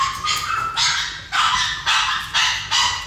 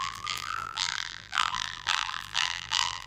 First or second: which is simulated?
second